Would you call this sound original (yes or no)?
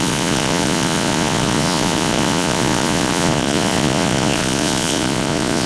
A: no